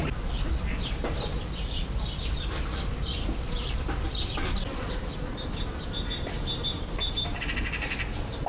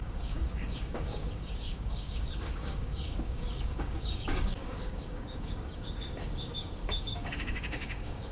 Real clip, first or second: first